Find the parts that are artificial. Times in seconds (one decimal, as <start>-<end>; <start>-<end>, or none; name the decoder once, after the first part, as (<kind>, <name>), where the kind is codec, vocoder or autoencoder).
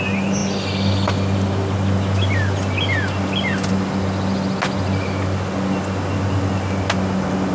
none